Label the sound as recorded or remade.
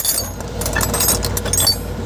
recorded